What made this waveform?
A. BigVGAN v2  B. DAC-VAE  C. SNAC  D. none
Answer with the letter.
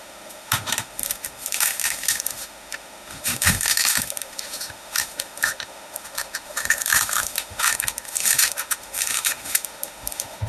B